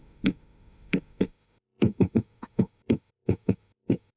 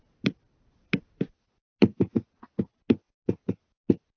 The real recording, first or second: second